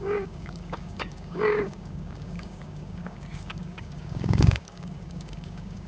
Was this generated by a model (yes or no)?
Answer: yes